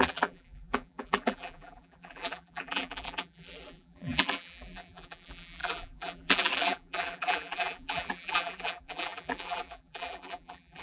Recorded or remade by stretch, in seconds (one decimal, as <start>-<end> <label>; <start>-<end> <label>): 0.0-10.8 remade